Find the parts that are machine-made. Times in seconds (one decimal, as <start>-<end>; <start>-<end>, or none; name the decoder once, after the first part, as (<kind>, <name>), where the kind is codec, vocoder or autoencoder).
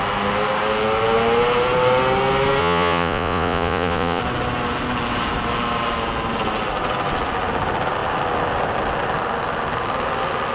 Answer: 2.6-4.2 (vocoder, Vocos)